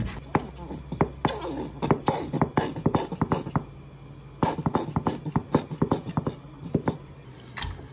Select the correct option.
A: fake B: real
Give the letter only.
B